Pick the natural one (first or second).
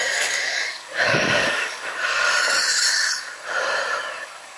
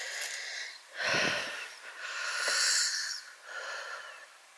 second